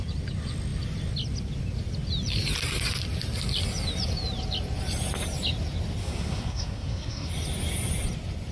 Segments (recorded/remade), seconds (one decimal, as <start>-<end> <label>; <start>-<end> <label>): 0.0-6.0 recorded; 6.0-7.3 remade; 7.3-8.5 recorded